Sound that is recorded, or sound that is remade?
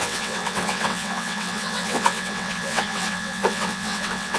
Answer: remade